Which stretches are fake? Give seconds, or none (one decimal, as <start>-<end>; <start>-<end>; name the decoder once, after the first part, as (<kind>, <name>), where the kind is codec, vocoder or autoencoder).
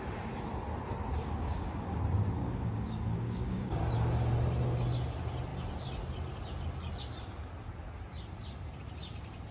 1.2-2.0 (codec, DAC); 2.4-3.8